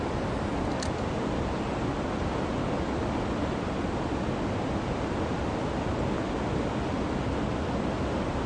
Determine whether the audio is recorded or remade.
recorded